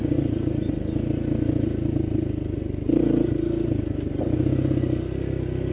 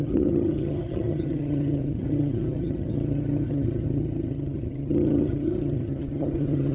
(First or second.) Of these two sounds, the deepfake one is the second